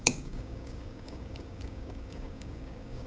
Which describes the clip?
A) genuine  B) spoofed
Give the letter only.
B